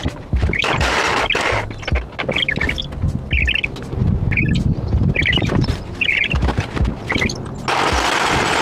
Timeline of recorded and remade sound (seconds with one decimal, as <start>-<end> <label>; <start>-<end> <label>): 0.0-1.0 remade; 1.0-4.0 recorded; 4.0-7.0 remade; 7.0-8.6 recorded